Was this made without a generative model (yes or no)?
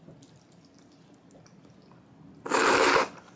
yes